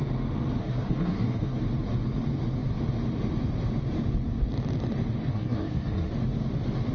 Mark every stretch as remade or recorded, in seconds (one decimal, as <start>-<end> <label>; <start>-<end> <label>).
0.0-0.6 recorded; 0.6-1.6 remade; 1.6-5.3 recorded; 5.3-6.1 remade; 6.1-6.9 recorded